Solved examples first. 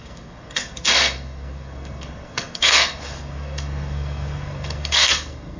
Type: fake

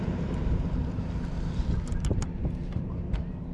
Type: real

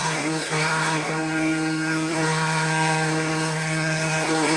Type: fake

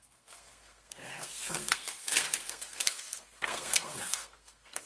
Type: fake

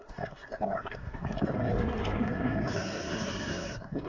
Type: fake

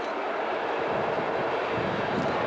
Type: real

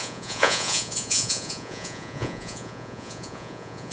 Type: fake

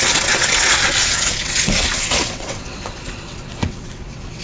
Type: fake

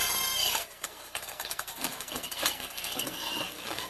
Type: fake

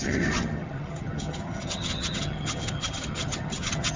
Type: fake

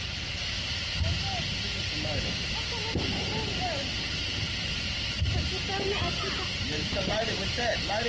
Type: real